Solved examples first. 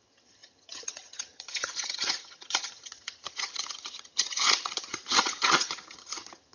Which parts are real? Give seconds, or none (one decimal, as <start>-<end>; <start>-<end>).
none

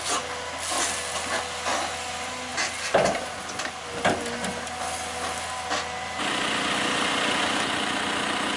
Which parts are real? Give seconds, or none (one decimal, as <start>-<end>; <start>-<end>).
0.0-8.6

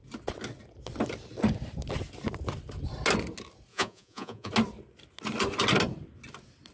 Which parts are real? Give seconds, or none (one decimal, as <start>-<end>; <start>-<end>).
0.0-3.7; 4.5-6.7

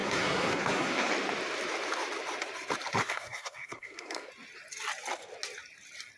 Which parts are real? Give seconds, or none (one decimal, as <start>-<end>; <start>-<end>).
1.1-3.0; 4.3-6.2

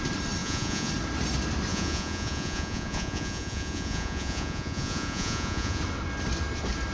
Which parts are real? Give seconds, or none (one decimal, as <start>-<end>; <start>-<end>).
0.0-0.4; 0.9-1.7; 5.8-6.9

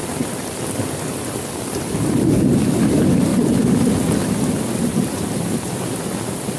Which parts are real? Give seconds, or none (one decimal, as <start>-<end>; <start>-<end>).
0.0-4.9; 5.8-6.6